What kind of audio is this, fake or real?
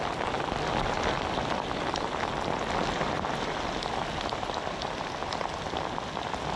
real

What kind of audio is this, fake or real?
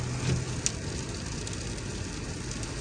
real